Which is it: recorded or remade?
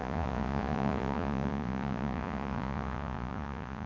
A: remade